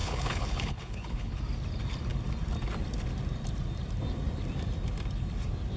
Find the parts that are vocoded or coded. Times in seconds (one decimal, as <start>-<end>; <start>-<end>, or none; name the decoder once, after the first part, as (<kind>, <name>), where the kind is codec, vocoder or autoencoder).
0.0-1.4 (codec, HILCodec)